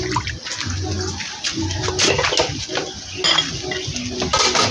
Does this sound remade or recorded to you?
recorded